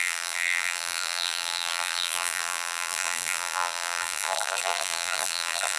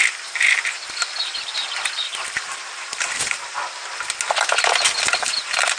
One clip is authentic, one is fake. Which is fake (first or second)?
first